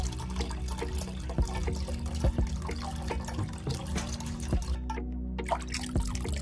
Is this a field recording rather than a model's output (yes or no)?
yes